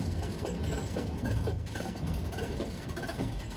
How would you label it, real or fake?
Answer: fake